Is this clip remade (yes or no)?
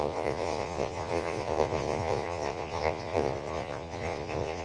yes